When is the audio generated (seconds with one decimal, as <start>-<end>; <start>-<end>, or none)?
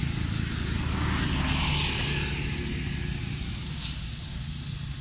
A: 3.2-3.7